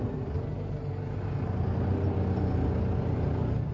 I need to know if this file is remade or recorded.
recorded